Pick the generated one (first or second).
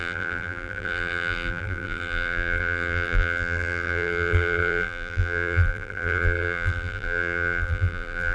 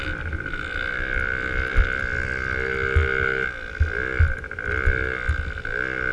first